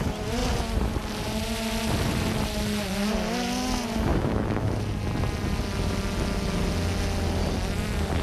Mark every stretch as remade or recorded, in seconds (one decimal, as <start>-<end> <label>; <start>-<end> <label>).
0.0-4.1 recorded; 4.1-4.7 remade; 4.7-8.2 recorded